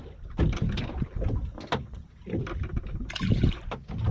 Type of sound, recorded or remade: recorded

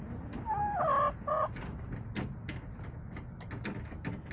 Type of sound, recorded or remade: recorded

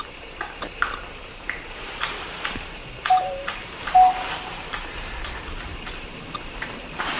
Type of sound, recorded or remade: remade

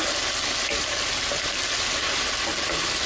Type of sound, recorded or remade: recorded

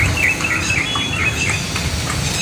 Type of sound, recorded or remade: recorded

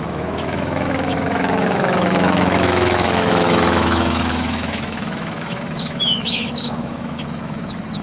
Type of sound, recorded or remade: remade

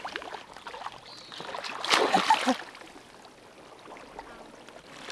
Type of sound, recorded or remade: recorded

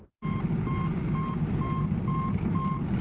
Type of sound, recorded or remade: recorded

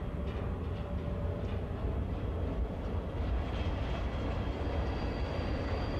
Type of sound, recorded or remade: recorded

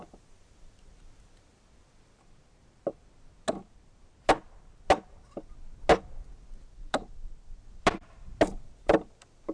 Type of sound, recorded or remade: recorded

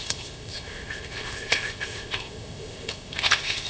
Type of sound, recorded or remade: remade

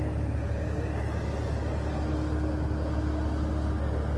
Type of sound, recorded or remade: recorded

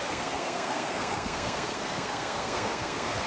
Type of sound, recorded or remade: remade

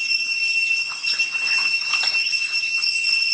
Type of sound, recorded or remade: recorded